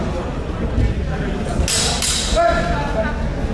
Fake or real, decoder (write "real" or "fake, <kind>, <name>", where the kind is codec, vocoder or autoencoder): real